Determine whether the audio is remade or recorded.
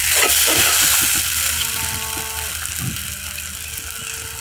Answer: recorded